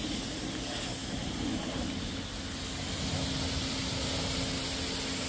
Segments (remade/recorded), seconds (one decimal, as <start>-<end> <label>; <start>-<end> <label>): 0.0-5.3 recorded